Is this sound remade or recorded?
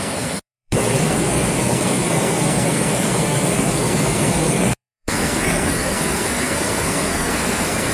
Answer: remade